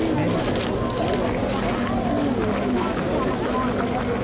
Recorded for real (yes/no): yes